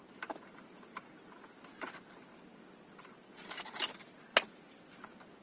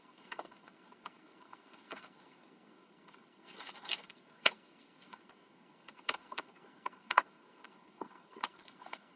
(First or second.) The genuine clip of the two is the first